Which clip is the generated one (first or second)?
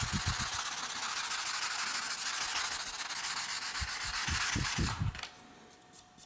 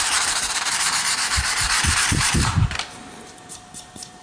second